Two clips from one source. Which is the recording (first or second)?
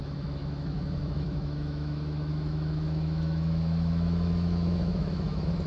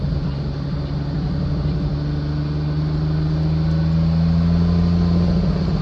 second